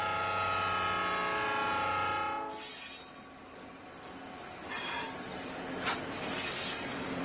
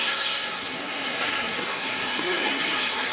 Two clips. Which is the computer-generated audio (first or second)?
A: second